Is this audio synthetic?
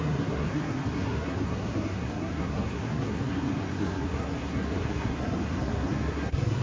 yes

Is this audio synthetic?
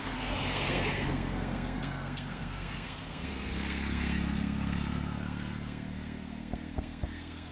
yes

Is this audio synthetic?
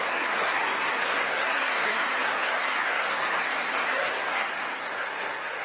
yes